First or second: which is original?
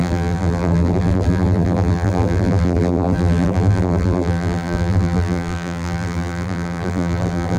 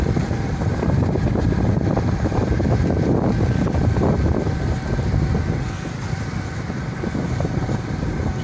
second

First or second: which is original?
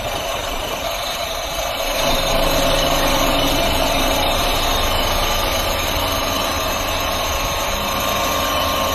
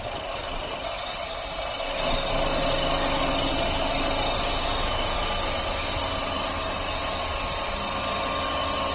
second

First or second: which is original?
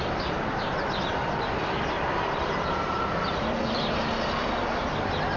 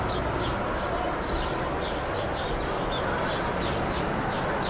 second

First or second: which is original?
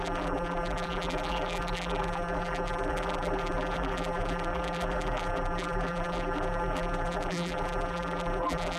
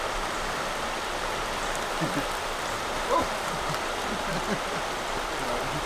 second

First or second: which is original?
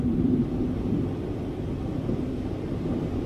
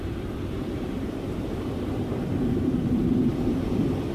first